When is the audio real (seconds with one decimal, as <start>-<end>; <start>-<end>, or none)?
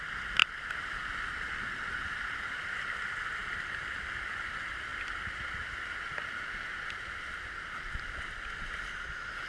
0.0-3.4; 4.1-9.5